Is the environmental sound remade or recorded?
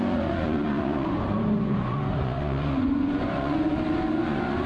remade